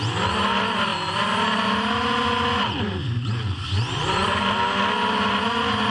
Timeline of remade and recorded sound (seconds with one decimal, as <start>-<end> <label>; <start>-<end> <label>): 0.0-5.9 recorded